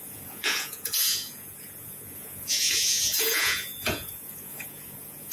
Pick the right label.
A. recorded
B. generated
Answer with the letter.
B